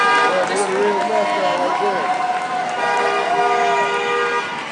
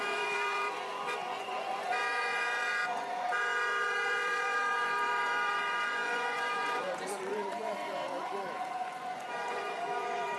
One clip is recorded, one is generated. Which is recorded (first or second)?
first